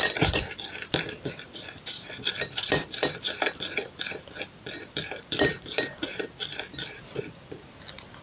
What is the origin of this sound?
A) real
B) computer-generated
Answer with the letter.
B